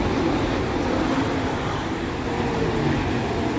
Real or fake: real